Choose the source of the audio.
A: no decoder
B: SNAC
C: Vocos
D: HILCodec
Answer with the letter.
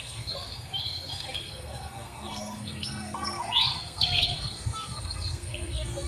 B